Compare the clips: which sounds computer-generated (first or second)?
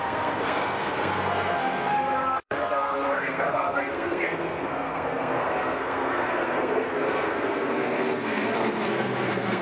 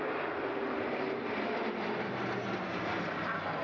first